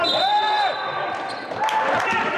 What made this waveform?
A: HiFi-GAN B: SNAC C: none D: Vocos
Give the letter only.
C